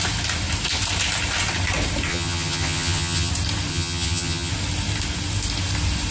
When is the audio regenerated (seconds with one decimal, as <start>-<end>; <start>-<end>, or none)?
2.1-3.3; 3.7-4.5